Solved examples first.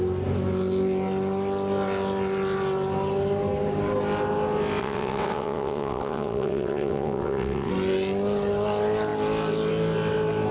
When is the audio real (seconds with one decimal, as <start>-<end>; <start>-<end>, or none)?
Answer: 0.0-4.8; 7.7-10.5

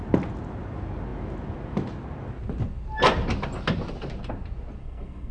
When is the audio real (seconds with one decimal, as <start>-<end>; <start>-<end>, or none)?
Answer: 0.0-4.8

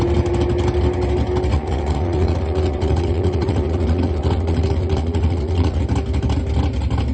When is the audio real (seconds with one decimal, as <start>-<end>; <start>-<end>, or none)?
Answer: 0.0-1.5; 5.8-7.1

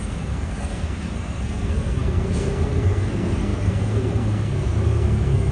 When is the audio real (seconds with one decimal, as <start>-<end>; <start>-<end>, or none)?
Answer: none

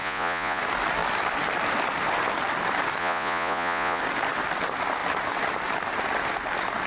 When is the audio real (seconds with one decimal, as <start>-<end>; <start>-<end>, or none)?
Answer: 0.6-3.0; 4.0-6.9

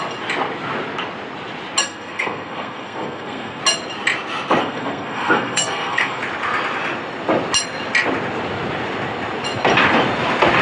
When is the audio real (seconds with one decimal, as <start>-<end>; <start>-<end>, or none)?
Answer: 0.0-1.8; 3.6-4.6; 6.2-10.6